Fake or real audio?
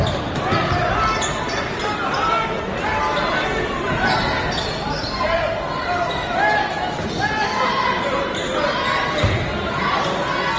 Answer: real